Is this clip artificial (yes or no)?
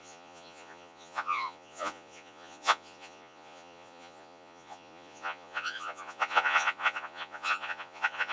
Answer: yes